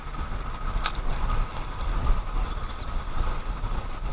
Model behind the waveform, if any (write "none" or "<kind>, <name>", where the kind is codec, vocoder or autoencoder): none